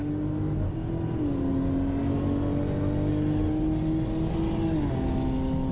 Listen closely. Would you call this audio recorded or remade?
recorded